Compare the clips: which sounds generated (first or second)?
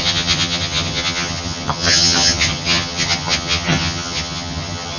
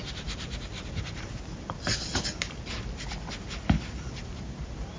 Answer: first